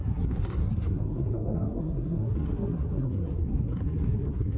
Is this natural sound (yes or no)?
no